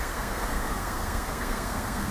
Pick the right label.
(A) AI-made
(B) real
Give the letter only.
A